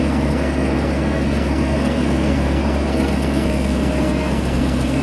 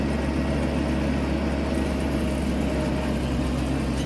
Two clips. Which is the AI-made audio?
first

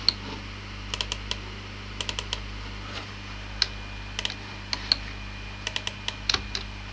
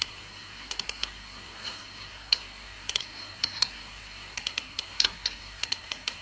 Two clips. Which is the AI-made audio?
second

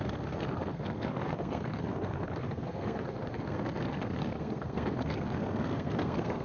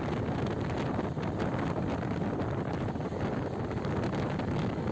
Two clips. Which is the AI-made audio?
first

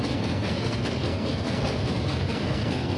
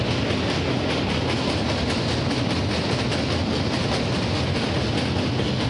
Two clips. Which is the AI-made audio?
first